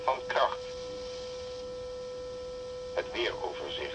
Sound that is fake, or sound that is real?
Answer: real